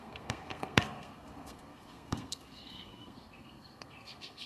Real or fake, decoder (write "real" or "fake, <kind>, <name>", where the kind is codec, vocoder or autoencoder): fake, codec, SNAC